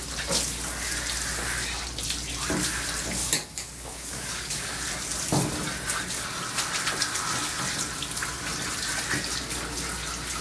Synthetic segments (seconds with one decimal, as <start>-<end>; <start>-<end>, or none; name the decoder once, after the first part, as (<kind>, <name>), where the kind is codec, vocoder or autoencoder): 3.2-4.8 (codec, DAC)